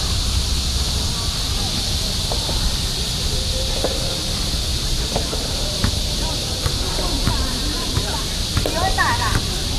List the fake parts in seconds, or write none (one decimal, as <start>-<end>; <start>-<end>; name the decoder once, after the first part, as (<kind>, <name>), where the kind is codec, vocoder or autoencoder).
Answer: 4.7-8.4 (vocoder, BigVGAN v2)

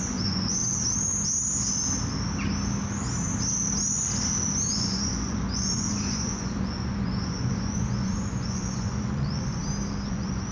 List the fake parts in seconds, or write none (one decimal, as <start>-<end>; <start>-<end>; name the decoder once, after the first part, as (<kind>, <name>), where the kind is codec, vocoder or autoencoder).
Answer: 0.0-0.6 (vocoder, Vocos); 4.7-9.6; 10.1-10.5

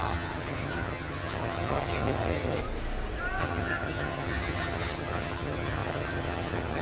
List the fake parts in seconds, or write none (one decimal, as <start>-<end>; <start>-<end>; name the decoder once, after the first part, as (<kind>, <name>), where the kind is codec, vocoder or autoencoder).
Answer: 0.0-2.6 (vocoder, HiFi-GAN); 3.4-6.8

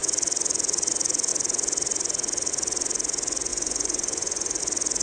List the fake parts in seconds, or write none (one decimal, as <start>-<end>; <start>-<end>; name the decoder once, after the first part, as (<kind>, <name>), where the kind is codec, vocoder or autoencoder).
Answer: 3.5-4.6 (vocoder, Vocos)

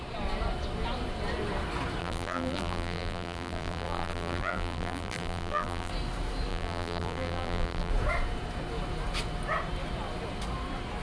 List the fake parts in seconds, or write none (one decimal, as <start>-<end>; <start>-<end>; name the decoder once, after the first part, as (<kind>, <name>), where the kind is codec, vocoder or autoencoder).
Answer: 2.0-5.9 (vocoder, BigVGAN v2); 6.5-7.9

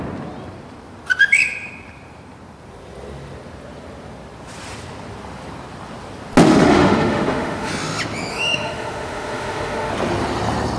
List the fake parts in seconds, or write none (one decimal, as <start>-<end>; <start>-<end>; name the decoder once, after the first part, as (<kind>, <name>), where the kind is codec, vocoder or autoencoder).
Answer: 6.5-7.7 (autoencoder, DAC-VAE); 8.3-9.9